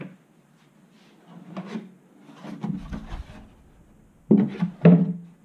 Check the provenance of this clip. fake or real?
real